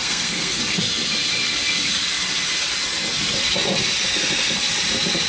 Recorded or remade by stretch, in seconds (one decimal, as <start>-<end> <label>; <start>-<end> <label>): 0.0-0.6 remade; 0.6-5.3 recorded